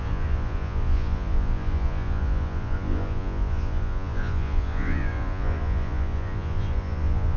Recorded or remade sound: remade